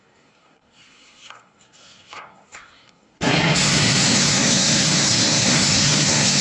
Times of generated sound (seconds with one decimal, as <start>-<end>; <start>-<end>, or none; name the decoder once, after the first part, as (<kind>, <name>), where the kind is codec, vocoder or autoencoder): 0.0-6.4 (codec, SNAC)